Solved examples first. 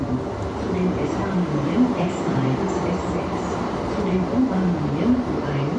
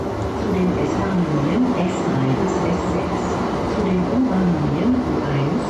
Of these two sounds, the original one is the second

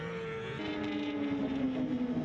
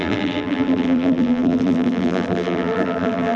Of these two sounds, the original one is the first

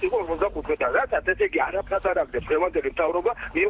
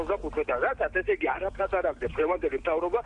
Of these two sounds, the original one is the second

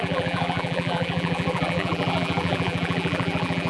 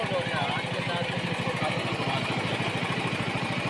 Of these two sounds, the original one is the second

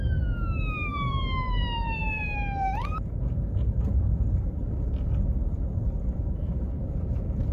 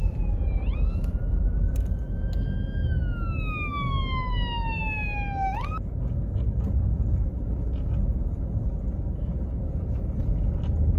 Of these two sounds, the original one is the second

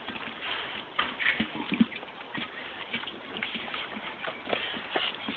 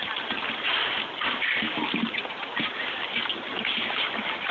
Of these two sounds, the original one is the second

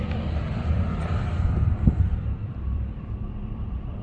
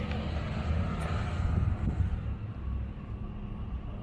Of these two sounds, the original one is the second